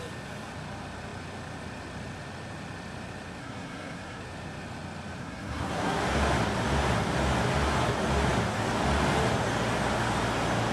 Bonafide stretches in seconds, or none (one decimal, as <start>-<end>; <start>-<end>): 0.0-3.4; 4.2-5.2; 6.0-10.7